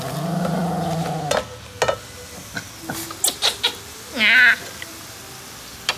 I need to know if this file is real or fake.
real